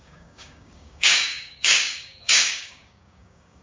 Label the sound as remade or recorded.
remade